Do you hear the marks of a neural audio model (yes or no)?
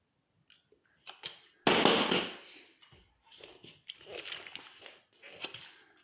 no